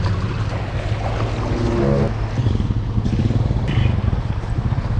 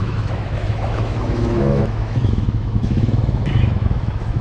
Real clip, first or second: first